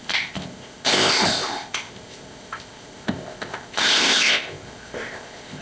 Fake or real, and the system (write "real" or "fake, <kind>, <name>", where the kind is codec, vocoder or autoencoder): fake, codec, ZipCodec